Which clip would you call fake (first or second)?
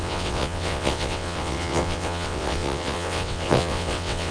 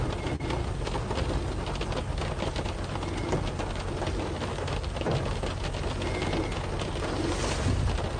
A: first